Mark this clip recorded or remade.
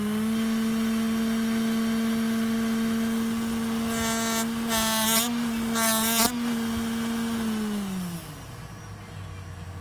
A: recorded